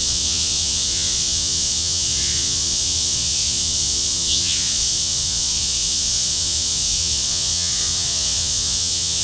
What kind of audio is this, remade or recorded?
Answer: remade